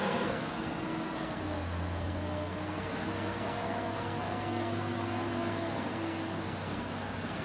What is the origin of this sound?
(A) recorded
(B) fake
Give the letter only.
B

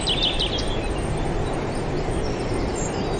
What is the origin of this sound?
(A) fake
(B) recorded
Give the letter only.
B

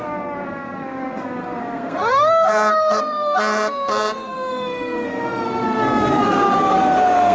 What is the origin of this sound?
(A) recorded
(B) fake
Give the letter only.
B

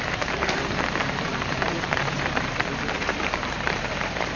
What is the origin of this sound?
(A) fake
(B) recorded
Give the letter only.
A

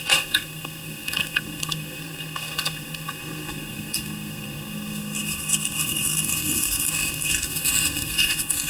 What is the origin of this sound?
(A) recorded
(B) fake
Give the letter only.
B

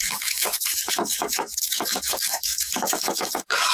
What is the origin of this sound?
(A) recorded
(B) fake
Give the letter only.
B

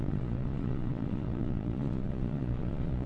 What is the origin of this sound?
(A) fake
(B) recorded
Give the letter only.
A